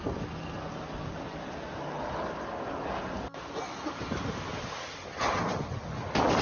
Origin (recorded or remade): recorded